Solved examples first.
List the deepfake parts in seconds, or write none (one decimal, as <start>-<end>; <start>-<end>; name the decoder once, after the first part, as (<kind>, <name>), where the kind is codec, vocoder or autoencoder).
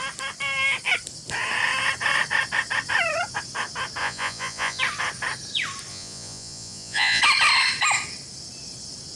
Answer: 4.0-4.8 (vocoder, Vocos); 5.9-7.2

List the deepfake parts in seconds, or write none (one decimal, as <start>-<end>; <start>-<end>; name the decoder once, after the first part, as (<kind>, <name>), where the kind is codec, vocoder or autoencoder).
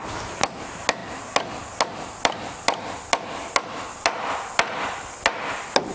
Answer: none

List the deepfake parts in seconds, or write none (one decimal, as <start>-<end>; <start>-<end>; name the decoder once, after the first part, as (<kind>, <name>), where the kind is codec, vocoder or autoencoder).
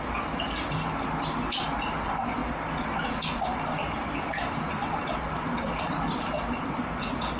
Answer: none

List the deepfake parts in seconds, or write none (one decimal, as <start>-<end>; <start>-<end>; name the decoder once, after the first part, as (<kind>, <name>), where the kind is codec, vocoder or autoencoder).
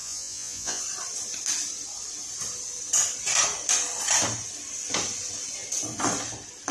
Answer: 0.0-0.8 (vocoder, Vocos)